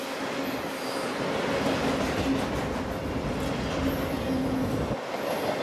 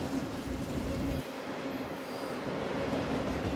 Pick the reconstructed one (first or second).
second